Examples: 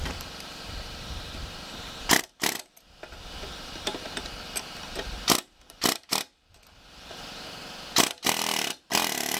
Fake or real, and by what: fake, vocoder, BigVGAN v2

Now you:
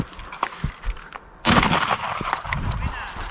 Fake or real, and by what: real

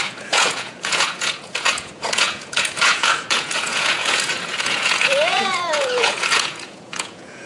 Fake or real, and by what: fake, vocoder, Vocos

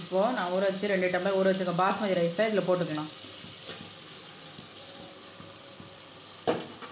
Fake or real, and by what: real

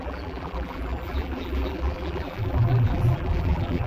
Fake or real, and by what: fake, vocoder, BigVGAN v2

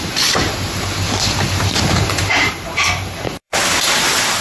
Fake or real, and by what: fake, vocoder, BigVGAN v2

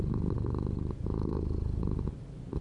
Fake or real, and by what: real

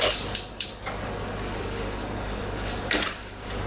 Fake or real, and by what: fake, codec, DAC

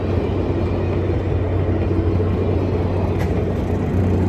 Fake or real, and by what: real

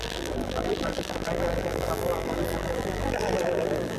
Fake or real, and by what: fake, vocoder, BigVGAN v2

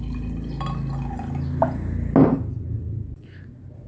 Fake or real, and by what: real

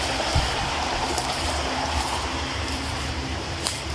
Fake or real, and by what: fake, vocoder, BigVGAN v2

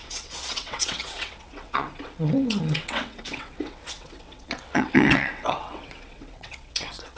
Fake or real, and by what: fake, vocoder, WaveNeXt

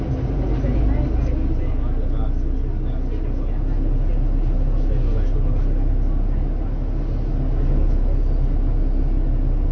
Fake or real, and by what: real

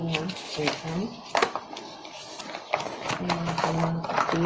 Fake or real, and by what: real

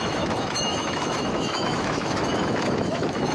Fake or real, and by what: fake, autoencoder, DAC-VAE